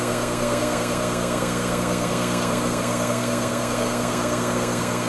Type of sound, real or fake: fake